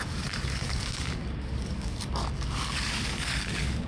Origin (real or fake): fake